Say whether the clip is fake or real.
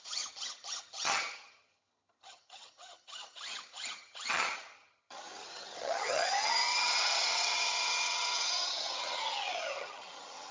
fake